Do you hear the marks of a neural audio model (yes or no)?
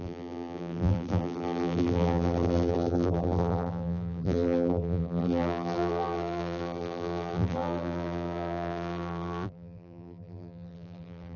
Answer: yes